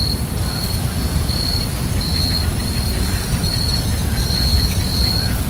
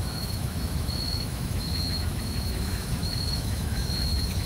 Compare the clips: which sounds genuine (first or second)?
first